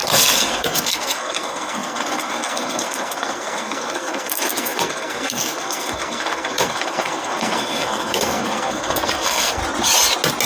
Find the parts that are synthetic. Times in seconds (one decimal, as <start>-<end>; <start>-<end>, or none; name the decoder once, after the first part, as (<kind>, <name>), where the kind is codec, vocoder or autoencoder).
0.0-9.6 (codec, SNAC)